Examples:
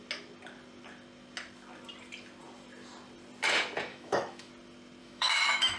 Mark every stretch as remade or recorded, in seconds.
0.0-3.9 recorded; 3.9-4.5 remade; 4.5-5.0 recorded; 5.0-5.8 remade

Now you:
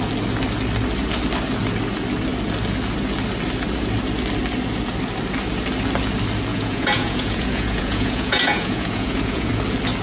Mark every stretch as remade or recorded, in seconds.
0.0-6.5 recorded; 6.5-9.5 remade; 9.5-10.0 recorded

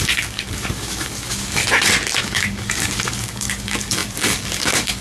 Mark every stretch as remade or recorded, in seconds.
0.0-1.6 remade; 1.6-2.2 recorded; 2.2-5.0 remade

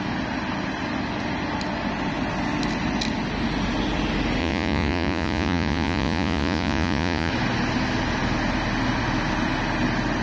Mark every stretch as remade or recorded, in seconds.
0.0-4.4 recorded; 4.4-7.3 remade; 7.3-10.2 recorded

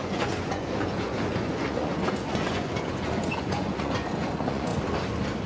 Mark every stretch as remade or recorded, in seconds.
0.0-4.7 remade; 4.7-5.5 recorded

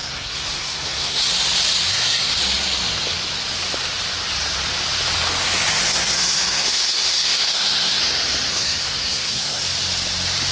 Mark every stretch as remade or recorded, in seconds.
0.0-1.3 remade; 1.3-1.9 recorded; 1.9-2.4 remade; 2.4-5.9 recorded; 5.9-8.0 remade; 8.0-8.5 recorded; 8.5-9.6 remade; 9.6-10.5 recorded

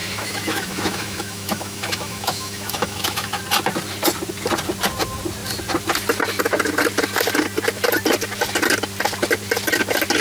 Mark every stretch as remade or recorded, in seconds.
0.0-3.4 remade; 3.4-10.2 recorded

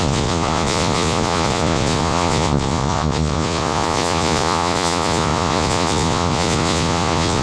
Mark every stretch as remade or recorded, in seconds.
0.0-7.4 remade